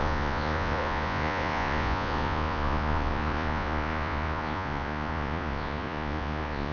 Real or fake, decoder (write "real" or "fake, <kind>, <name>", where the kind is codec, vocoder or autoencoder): fake, vocoder, Vocos